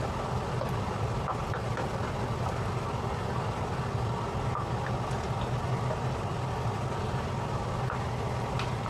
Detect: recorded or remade recorded